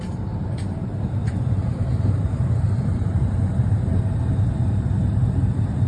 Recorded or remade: remade